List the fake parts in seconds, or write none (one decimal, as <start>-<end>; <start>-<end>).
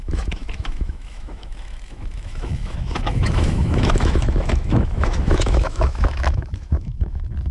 0.0-7.5